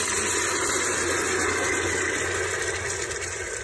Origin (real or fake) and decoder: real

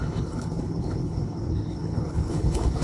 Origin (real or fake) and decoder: fake, codec, HILCodec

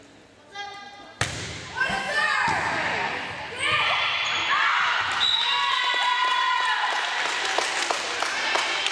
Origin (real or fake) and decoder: real